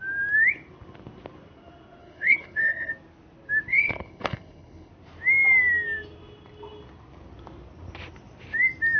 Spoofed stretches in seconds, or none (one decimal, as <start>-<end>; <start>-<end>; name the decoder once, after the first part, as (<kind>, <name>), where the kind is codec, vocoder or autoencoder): 2.0-2.9 (codec, HILCodec); 3.7-4.9

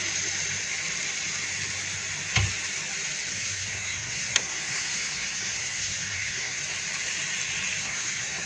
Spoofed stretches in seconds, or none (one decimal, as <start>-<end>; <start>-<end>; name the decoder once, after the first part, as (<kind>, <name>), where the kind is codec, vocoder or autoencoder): 3.3-6.6 (codec, SNAC); 7.8-8.5

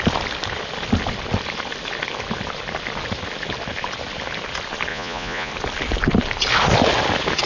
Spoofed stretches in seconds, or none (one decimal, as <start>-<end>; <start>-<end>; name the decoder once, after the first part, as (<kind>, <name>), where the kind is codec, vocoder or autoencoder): 4.9-5.5 (vocoder, Vocos)

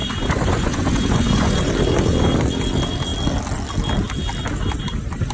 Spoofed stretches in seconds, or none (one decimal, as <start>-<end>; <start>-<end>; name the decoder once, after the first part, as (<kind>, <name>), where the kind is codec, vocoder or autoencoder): 0.0-1.7 (vocoder, Vocos)